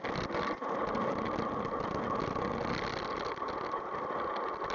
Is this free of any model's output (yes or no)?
yes